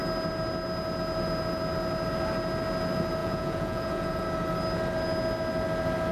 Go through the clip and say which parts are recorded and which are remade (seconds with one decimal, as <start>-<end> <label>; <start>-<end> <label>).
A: 0.0-3.2 recorded; 3.2-4.2 remade; 4.2-6.1 recorded